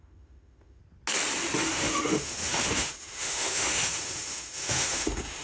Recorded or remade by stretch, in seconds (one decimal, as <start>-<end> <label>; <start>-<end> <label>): 0.0-0.8 remade; 0.8-1.6 recorded; 1.6-5.4 remade